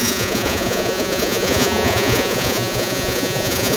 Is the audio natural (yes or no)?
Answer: no